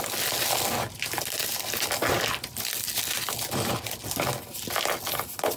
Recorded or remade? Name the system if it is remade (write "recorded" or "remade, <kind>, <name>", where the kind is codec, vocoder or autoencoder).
recorded